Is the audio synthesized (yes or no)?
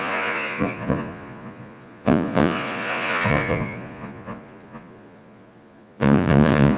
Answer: yes